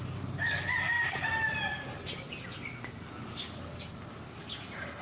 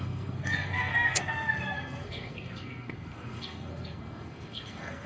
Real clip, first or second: first